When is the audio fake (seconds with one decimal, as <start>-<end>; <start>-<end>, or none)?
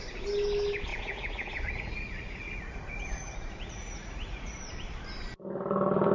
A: 0.9-4.6